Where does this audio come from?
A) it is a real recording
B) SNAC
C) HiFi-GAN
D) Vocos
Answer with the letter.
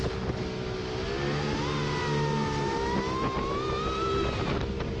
A